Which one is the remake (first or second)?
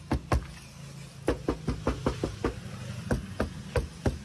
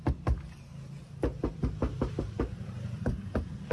second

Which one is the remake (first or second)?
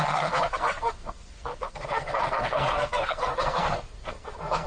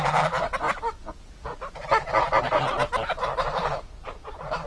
first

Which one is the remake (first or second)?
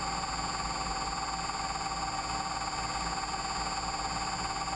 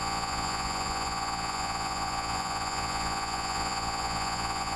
second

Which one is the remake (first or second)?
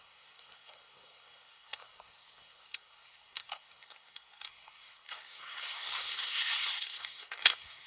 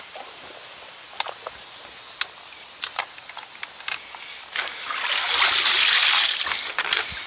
first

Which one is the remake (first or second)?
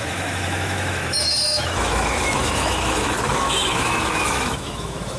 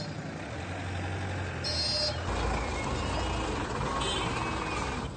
first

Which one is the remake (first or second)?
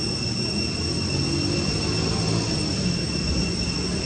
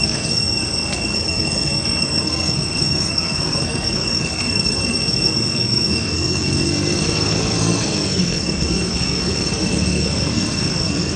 second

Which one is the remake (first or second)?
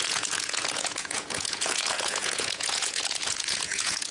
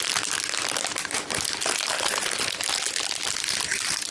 first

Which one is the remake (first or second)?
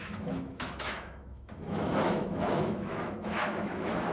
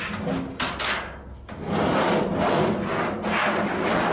first